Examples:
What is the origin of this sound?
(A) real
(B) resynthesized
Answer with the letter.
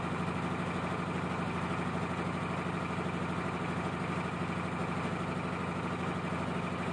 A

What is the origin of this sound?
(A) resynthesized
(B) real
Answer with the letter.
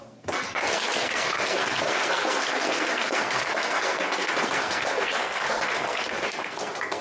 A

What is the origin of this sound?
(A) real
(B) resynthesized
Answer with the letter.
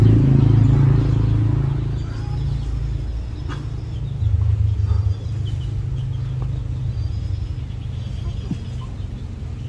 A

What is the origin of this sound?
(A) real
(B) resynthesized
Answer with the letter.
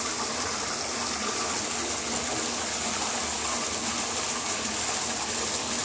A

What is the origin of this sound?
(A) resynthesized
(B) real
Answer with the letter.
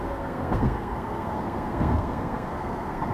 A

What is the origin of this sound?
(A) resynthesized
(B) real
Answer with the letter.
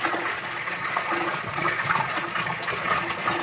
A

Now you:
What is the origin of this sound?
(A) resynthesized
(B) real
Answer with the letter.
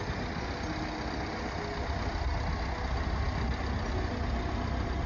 B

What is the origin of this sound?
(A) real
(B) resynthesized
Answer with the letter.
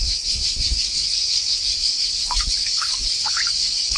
B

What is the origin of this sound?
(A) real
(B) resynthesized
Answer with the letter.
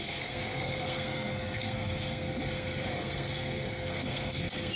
B